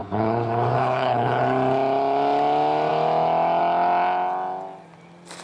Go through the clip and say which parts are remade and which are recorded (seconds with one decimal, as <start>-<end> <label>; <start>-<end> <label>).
0.0-1.4 remade; 1.4-5.4 recorded